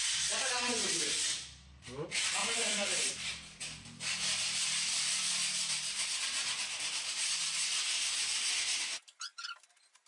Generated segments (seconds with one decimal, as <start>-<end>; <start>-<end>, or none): 2.4-3.1

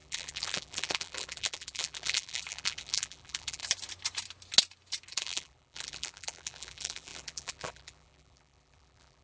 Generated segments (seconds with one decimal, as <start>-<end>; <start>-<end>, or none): 0.0-3.6; 5.1-9.2

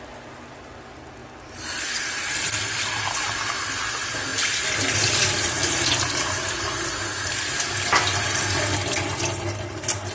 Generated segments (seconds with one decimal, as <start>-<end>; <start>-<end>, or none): 1.2-1.8

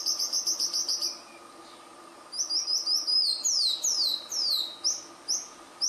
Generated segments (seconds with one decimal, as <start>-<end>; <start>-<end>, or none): none

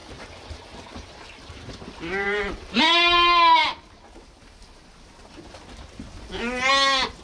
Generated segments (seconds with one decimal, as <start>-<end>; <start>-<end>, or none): 0.0-2.8

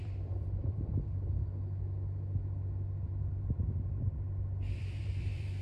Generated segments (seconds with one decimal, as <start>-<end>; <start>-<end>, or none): 0.0-0.9; 3.5-5.6

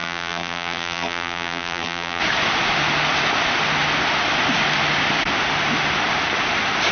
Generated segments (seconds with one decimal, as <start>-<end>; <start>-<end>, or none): 0.0-2.2

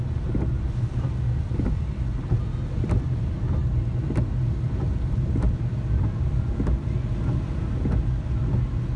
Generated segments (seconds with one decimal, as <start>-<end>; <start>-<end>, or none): none